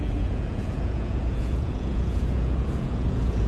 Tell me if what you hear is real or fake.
fake